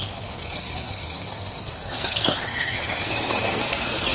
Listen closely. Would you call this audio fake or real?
fake